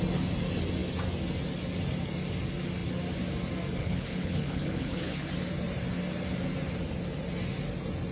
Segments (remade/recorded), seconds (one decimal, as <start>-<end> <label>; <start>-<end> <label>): 0.0-3.8 recorded; 3.8-5.3 remade; 5.3-8.1 recorded